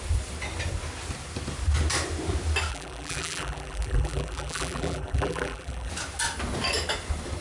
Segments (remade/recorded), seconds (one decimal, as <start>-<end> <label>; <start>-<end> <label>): 0.0-2.7 recorded; 2.7-5.9 remade; 5.9-7.4 recorded

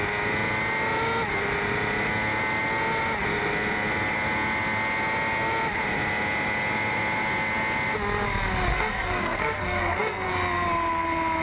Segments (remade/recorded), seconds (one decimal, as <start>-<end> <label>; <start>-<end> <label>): 0.0-8.7 recorded; 8.7-10.3 remade; 10.3-11.4 recorded

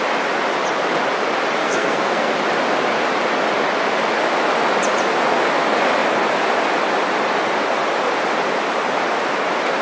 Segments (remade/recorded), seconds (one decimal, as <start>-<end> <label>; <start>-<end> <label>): 0.0-1.6 recorded; 1.6-2.3 remade; 2.3-9.8 recorded